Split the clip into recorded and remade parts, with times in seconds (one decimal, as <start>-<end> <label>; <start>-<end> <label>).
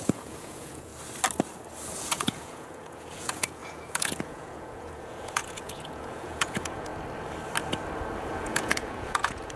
0.0-0.9 remade; 0.9-2.0 recorded; 2.0-6.9 remade; 6.9-8.2 recorded; 8.2-9.6 remade